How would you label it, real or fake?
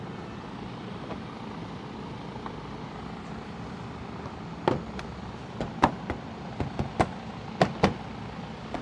real